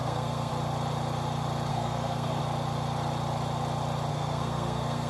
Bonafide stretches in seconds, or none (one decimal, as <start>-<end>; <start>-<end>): 0.5-1.7; 2.4-4.1